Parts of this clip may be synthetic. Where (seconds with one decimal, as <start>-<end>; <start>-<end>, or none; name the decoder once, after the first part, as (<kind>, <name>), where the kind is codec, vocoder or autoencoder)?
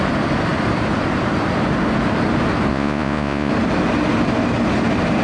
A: 2.7-3.5 (vocoder, Vocos)